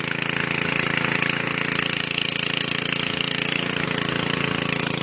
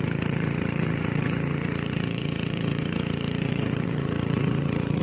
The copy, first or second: second